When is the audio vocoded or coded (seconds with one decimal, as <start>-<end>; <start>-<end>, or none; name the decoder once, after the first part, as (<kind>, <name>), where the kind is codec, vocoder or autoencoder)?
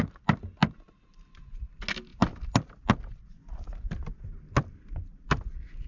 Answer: none